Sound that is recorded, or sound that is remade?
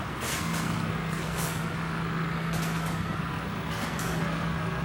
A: remade